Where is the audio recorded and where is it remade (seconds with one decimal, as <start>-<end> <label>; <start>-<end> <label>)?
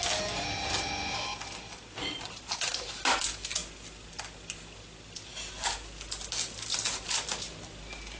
0.0-8.2 recorded